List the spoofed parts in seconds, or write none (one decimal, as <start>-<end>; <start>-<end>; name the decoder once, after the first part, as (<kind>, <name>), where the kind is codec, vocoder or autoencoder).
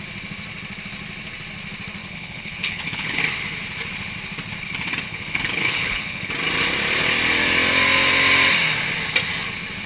2.0-3.2 (codec, HILCodec); 5.1-6.3